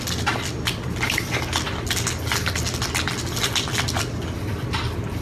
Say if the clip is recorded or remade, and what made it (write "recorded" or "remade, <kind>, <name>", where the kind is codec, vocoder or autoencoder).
recorded